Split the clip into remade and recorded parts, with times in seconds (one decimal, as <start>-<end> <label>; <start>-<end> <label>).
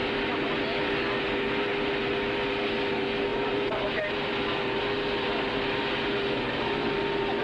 0.0-3.3 recorded; 3.3-4.0 remade; 4.0-7.4 recorded